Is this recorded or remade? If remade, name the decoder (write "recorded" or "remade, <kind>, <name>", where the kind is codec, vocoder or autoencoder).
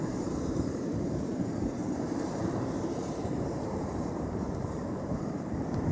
remade, vocoder, BigVGAN v2